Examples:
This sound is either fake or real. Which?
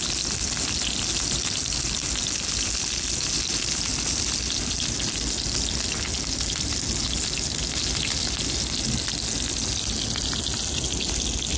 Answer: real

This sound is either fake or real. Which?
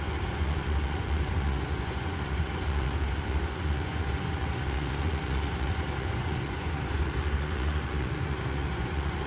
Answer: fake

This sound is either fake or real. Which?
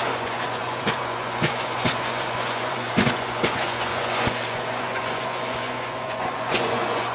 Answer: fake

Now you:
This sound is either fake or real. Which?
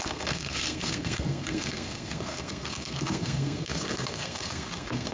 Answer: fake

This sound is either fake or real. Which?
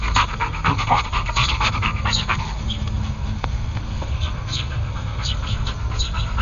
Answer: fake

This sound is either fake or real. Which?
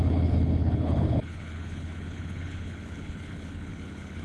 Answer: fake